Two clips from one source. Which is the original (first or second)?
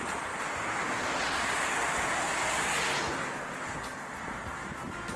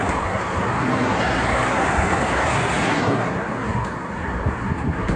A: first